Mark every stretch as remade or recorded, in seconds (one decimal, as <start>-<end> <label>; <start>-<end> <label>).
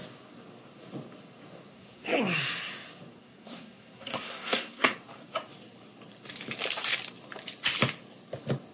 0.0-1.7 recorded; 1.7-2.2 remade; 2.2-3.2 recorded; 3.2-4.9 remade; 4.9-8.7 recorded